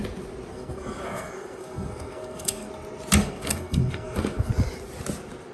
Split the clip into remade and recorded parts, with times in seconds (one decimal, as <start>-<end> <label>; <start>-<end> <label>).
0.0-0.5 recorded; 0.5-2.7 remade; 2.7-3.2 recorded; 3.2-4.5 remade; 4.5-5.5 recorded